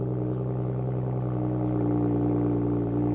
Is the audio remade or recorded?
recorded